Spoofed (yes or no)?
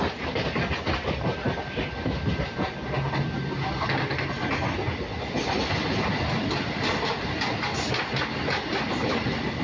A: no